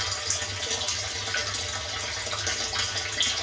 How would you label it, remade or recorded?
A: recorded